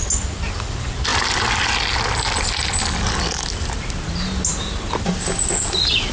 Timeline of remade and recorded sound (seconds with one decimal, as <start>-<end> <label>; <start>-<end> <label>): 0.0-6.1 recorded